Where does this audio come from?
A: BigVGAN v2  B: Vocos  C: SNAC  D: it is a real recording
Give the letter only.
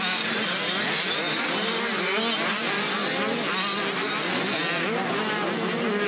D